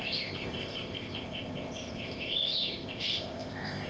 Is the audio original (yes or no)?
no